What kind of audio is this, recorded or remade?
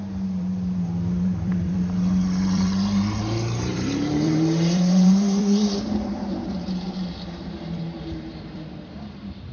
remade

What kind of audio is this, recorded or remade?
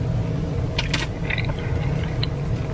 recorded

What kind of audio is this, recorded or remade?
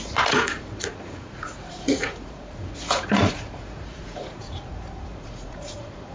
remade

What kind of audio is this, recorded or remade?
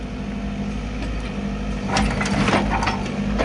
recorded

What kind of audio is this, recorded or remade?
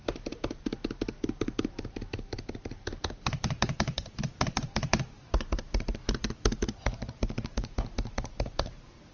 remade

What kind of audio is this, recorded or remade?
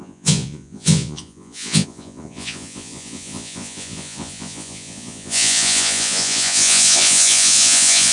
remade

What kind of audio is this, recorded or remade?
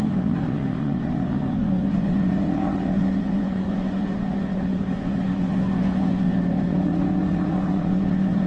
remade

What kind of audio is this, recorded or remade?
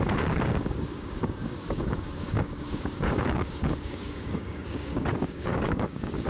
remade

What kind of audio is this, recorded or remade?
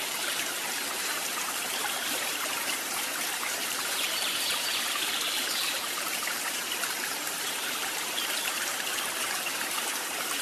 remade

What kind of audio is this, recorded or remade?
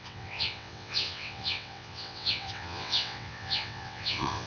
remade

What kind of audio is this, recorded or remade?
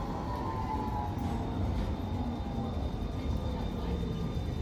recorded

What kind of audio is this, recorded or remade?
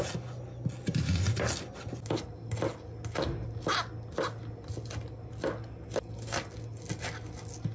recorded